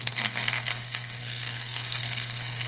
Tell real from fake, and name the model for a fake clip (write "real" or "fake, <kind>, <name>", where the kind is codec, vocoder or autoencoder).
fake, codec, SNAC